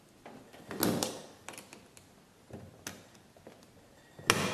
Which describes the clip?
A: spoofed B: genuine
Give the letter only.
B